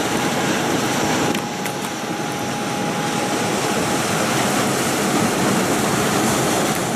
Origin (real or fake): real